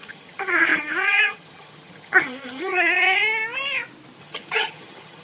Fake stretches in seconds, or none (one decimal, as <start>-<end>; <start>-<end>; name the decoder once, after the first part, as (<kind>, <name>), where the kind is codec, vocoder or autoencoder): 0.0-3.2 (vocoder, HiFi-GAN); 4.2-5.2